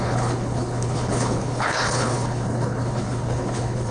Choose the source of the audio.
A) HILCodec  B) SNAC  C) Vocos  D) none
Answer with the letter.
A